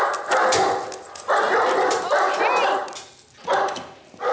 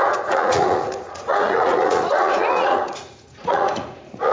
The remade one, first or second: second